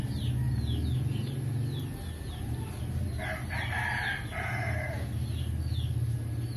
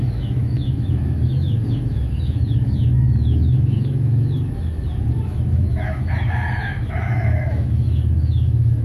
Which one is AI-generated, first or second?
second